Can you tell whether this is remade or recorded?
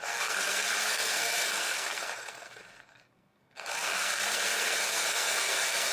remade